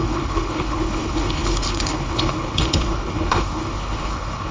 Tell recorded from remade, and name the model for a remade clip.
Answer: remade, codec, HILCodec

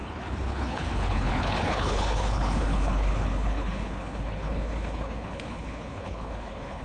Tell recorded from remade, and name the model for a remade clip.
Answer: remade, codec, HILCodec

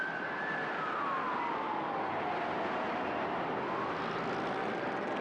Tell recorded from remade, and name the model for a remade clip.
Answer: recorded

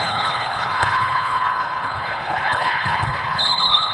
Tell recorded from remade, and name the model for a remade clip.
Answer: remade, codec, HILCodec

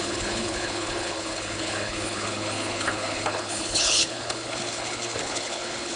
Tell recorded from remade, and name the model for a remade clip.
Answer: remade, codec, HILCodec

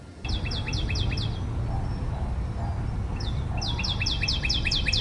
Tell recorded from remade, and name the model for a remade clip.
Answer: recorded